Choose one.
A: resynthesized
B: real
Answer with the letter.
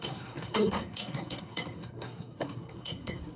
A